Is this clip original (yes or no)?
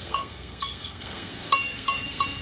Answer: no